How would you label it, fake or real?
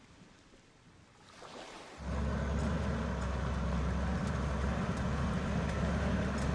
real